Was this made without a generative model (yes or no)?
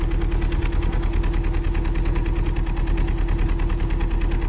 yes